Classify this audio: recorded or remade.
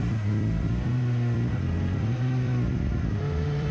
remade